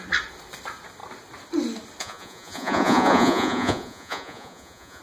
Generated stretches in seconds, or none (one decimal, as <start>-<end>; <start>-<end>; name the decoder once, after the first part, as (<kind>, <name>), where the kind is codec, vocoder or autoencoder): 2.0-5.0 (vocoder, Vocos)